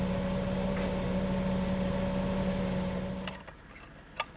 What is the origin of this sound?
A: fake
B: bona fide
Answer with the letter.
B